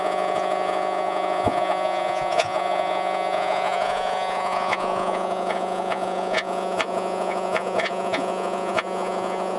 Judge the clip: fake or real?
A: fake